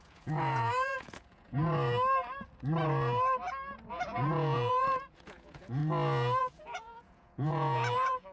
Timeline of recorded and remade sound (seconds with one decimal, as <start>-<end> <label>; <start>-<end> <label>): 0.0-1.6 remade; 1.6-3.9 recorded; 3.9-5.8 remade; 5.8-6.4 recorded; 6.4-8.3 remade